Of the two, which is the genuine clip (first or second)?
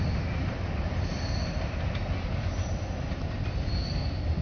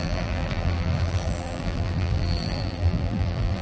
first